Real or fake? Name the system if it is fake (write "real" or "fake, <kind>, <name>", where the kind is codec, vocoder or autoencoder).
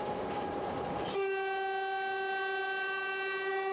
real